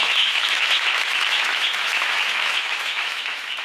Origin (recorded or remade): remade